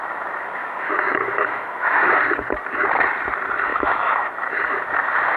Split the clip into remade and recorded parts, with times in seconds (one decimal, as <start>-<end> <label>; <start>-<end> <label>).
0.0-0.6 recorded; 0.6-2.1 remade; 2.1-3.7 recorded; 3.7-4.5 remade; 4.5-5.4 recorded